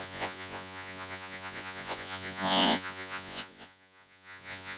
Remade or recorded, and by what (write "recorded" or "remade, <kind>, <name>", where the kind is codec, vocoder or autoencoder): remade, vocoder, Vocos